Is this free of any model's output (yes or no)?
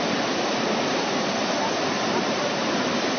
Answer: no